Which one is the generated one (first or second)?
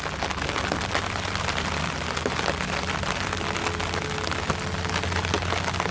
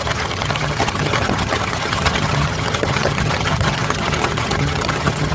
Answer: second